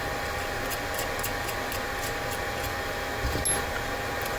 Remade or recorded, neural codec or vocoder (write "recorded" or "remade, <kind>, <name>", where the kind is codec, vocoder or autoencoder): recorded